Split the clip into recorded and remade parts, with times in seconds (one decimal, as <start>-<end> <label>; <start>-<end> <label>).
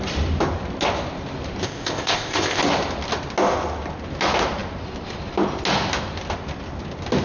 0.0-1.6 recorded; 1.6-2.6 remade; 2.6-7.2 recorded